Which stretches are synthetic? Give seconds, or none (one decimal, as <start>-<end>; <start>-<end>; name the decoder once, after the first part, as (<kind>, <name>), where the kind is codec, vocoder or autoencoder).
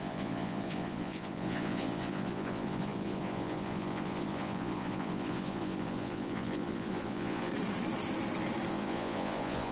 0.0-7.5 (vocoder, Vocos); 8.7-9.7